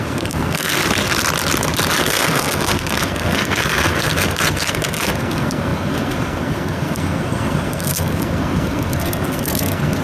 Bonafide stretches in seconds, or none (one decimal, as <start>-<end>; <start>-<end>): 0.8-2.0